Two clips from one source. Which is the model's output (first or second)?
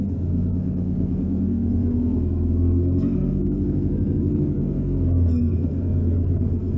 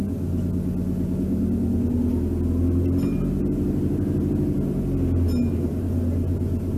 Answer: first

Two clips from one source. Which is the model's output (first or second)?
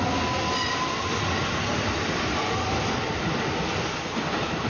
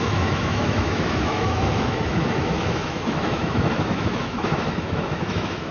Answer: second